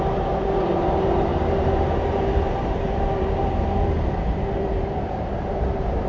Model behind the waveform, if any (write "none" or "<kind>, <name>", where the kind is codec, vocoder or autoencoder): vocoder, BigVGAN v2